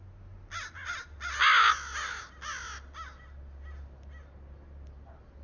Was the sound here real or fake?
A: real